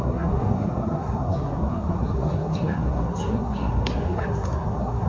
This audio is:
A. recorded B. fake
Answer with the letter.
B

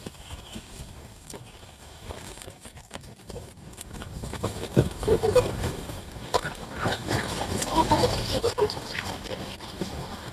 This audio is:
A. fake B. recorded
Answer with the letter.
A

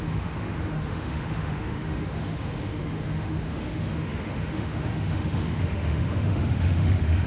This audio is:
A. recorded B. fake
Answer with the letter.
B